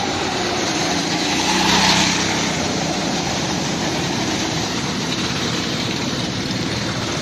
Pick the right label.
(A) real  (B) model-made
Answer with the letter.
B